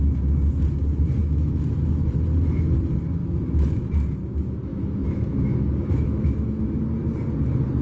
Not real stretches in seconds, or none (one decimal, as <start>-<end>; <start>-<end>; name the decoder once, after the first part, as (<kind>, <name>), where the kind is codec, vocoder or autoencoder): 1.2-2.1 (autoencoder, DAC-VAE); 3.2-3.9; 4.7-6.8